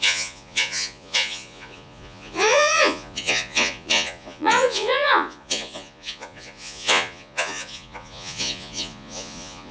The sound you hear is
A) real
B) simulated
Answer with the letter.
B